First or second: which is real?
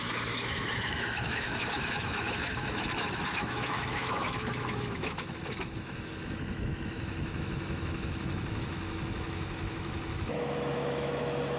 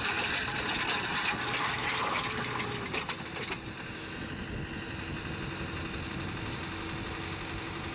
second